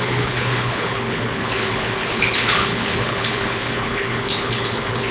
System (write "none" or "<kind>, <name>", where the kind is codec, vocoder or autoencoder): codec, HILCodec